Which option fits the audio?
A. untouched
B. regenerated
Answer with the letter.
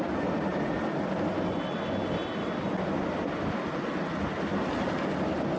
A